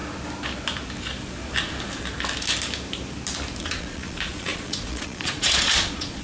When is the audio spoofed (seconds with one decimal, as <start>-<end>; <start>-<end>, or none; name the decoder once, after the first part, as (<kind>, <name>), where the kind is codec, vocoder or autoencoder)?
3.6-6.2 (vocoder, Vocos)